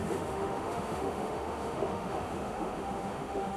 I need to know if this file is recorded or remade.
remade